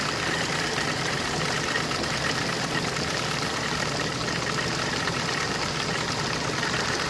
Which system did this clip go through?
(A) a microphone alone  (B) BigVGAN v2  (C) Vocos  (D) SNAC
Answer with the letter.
A